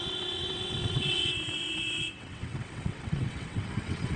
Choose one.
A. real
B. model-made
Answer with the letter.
B